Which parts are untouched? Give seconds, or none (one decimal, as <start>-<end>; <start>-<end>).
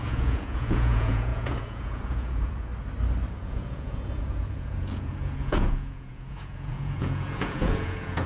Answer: 2.7-3.3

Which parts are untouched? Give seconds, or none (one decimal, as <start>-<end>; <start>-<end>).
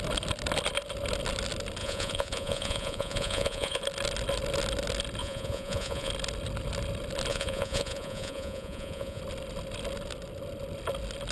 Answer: 0.0-1.8; 3.8-5.2; 6.1-7.3; 9.2-11.3